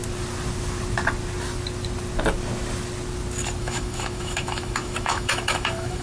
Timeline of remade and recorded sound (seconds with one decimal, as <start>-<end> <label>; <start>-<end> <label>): 0.0-3.6 recorded; 3.6-6.0 remade